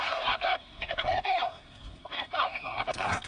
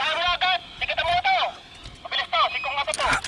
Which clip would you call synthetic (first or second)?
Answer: first